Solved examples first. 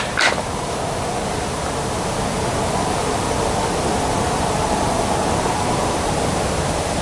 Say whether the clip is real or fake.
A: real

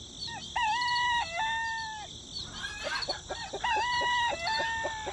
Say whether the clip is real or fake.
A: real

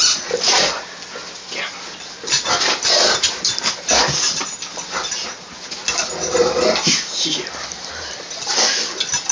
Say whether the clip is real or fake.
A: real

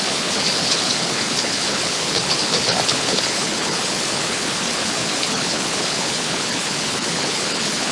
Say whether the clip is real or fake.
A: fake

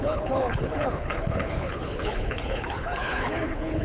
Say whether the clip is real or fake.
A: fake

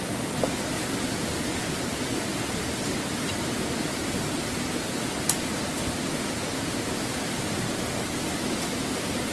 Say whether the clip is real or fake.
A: real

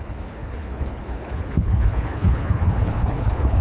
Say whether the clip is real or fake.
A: fake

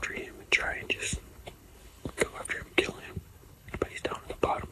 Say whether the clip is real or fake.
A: fake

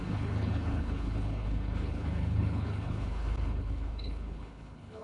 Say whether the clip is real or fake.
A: fake